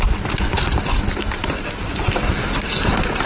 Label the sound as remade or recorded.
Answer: recorded